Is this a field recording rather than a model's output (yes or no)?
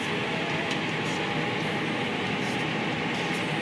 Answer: yes